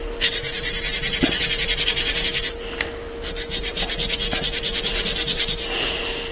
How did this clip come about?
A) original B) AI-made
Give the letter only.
A